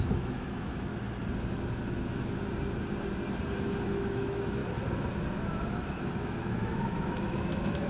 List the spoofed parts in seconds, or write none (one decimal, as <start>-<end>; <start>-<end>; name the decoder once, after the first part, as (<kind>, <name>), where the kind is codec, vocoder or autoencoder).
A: 0.0-0.9 (autoencoder, DAC-VAE); 3.6-4.6; 5.4-7.9